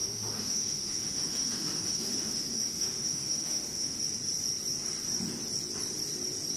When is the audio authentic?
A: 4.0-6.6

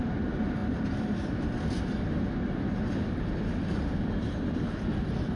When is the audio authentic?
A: 0.0-5.4

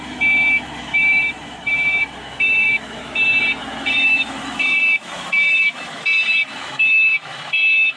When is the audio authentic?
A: 3.0-3.6

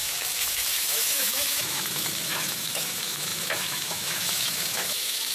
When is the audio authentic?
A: none